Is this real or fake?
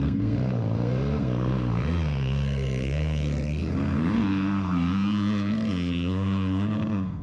fake